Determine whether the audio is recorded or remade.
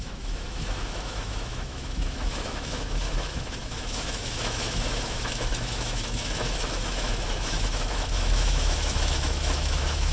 remade